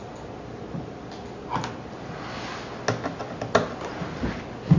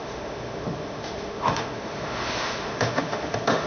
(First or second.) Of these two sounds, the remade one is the second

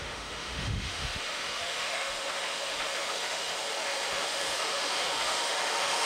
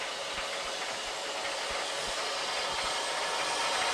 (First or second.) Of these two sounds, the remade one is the first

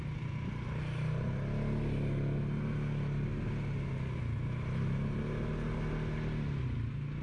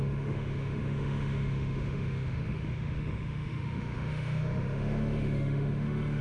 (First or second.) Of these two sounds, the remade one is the second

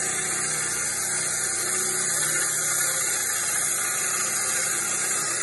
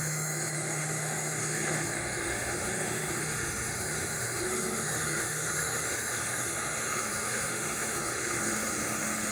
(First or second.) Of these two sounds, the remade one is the second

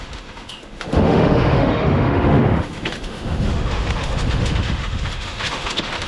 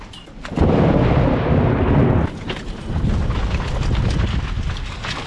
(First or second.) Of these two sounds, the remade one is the first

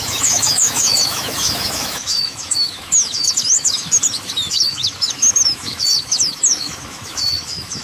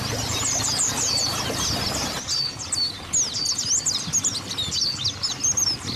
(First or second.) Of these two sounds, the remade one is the first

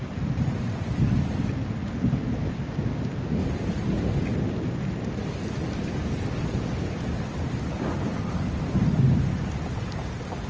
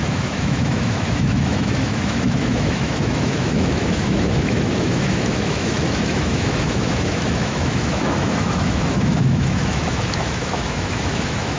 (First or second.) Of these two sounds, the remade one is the second